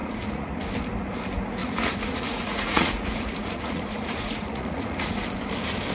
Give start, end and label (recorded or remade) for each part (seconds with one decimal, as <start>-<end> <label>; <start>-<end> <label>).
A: 0.0-0.7 remade; 0.7-1.6 recorded; 1.6-5.1 remade; 5.1-5.9 recorded